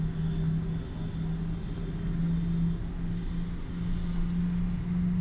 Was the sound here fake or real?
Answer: real